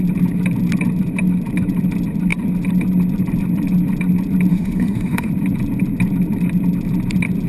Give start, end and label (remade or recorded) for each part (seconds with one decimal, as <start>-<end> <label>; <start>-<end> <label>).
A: 0.0-4.5 recorded; 4.5-5.3 remade; 5.3-7.5 recorded